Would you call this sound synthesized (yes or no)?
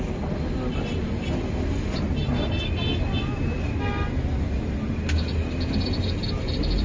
no